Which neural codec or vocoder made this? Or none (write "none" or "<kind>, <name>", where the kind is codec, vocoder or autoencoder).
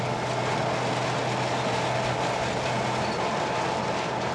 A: none